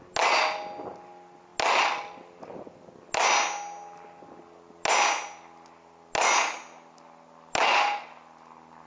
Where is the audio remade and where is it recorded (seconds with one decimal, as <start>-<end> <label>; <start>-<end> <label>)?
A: 0.0-8.9 recorded